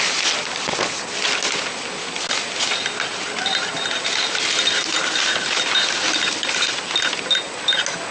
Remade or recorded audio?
recorded